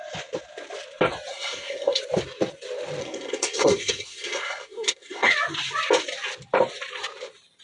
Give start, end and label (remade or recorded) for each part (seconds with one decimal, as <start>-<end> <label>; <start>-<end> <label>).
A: 0.0-1.3 recorded; 1.3-2.0 remade; 2.0-3.0 recorded; 3.0-5.3 remade; 5.3-7.6 recorded